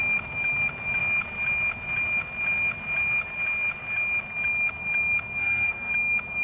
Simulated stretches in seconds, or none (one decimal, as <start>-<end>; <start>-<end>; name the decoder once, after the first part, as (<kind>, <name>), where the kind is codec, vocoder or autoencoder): 5.4-5.9 (codec, SNAC)